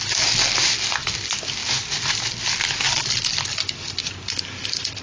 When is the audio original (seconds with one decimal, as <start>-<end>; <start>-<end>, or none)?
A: 0.0-5.0